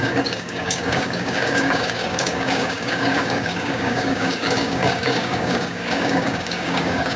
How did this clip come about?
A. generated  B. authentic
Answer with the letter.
A